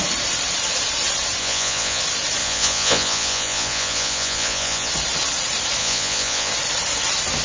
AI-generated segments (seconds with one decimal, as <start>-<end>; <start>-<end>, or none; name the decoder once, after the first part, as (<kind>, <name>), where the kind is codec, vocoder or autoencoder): 1.4-2.0 (vocoder, Vocos); 2.4-4.9; 5.8-6.5

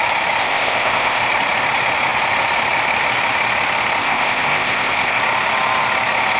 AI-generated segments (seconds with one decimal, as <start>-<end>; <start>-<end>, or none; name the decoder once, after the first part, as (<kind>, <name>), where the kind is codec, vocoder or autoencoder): 0.4-1.2 (codec, ZipCodec); 4.0-5.2